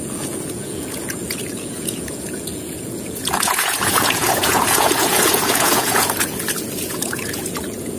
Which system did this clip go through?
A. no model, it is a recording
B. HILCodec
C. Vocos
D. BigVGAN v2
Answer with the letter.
C